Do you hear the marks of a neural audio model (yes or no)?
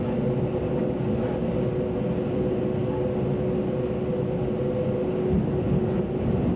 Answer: no